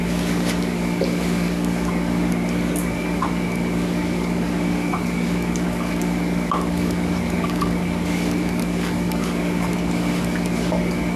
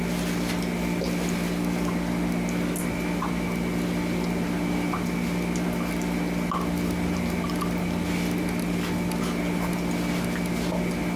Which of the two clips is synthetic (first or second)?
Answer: first